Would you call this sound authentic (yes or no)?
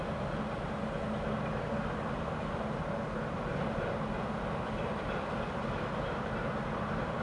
yes